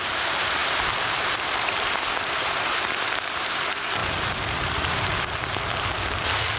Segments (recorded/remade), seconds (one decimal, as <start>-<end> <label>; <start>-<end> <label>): 0.0-5.1 remade; 5.1-6.6 recorded